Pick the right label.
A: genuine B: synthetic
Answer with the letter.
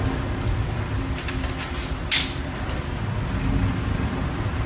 A